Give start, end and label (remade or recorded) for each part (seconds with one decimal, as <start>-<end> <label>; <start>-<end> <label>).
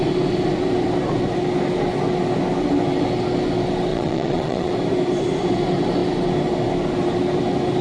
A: 0.0-3.9 recorded; 3.9-4.7 remade; 4.7-7.8 recorded